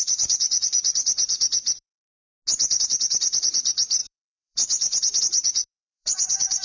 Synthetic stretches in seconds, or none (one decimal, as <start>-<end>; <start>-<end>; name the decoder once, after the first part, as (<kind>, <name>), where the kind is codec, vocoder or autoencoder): 0.0-2.1 (vocoder, BigVGAN v2); 2.8-6.6